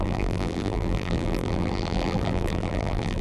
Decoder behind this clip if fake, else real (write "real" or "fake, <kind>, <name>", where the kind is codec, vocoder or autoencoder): fake, vocoder, BigVGAN v2